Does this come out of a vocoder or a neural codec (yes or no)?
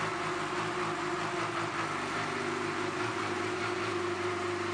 no